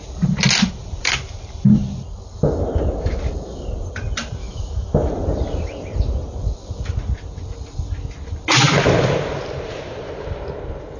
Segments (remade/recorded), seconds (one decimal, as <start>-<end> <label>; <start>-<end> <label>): 0.0-4.4 recorded; 4.4-5.1 remade; 5.1-11.0 recorded